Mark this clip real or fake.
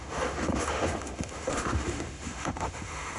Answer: fake